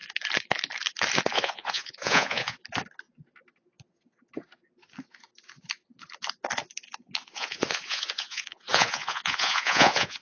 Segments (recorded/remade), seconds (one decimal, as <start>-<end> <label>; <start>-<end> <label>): 0.0-1.3 recorded; 1.3-2.6 remade; 2.6-7.2 recorded; 7.2-10.2 remade